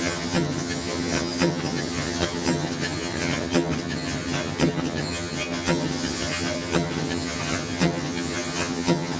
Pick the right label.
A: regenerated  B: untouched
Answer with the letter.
A